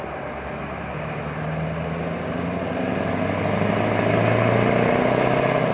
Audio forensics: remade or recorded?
recorded